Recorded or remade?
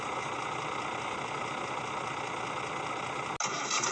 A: recorded